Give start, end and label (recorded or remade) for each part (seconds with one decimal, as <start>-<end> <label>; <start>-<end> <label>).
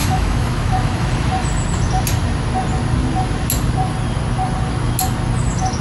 0.0-1.3 remade; 1.3-5.8 recorded